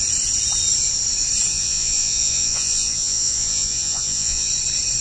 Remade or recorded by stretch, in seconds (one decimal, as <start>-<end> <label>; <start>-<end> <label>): 0.0-1.5 recorded; 1.5-4.5 remade; 4.5-5.0 recorded